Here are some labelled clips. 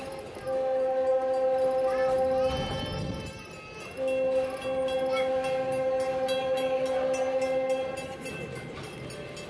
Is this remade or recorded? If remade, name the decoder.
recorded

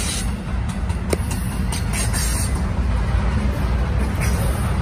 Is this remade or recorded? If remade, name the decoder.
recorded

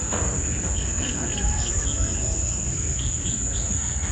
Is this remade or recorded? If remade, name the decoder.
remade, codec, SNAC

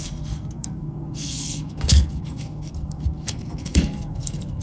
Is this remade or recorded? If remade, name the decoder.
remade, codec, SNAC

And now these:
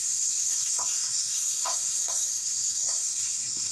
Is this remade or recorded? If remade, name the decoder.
remade, codec, SNAC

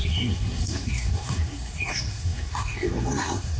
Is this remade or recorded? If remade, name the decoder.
remade, codec, SNAC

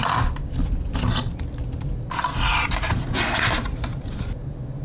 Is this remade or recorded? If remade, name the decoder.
recorded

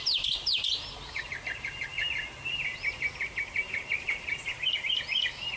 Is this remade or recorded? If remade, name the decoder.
recorded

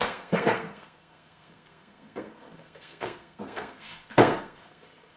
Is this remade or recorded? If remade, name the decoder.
remade, codec, SNAC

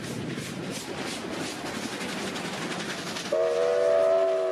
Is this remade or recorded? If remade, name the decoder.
recorded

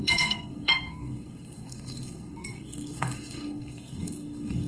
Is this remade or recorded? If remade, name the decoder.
remade, codec, SNAC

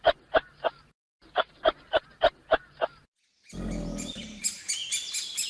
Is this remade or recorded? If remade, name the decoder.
recorded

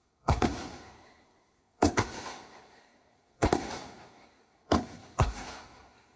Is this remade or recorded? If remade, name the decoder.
remade, codec, SNAC